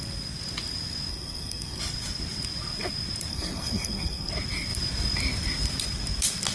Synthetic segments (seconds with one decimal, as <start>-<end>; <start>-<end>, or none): 1.1-1.8; 3.3-4.3